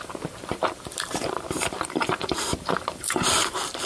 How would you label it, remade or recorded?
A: remade